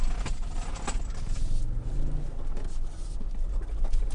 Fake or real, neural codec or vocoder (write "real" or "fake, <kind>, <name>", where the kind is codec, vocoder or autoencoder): real